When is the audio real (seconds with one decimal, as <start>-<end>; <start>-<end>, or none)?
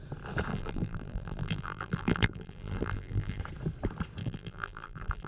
0.0-0.5; 3.4-4.2